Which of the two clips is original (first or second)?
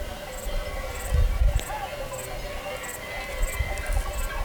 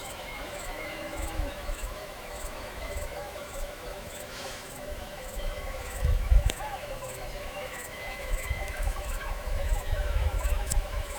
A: first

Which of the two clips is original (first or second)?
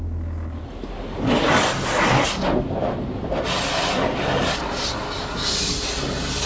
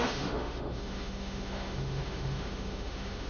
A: first